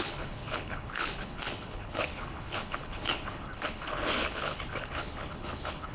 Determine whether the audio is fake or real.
fake